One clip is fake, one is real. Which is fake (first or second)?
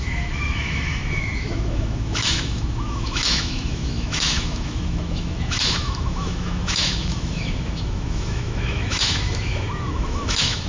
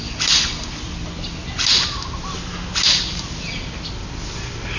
first